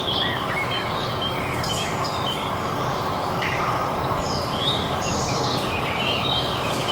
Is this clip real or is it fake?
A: fake